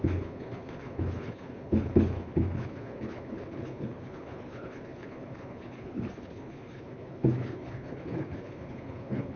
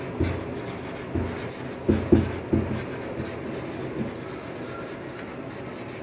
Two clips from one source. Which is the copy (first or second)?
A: first